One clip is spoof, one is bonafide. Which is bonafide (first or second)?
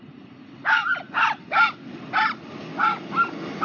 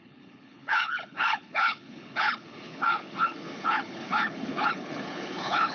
first